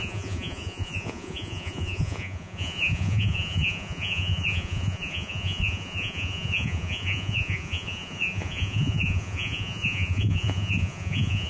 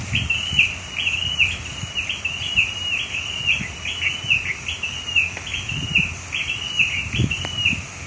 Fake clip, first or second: first